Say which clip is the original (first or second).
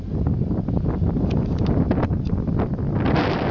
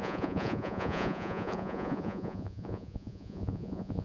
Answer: first